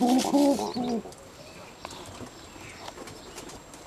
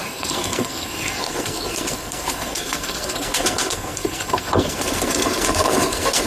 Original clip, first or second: first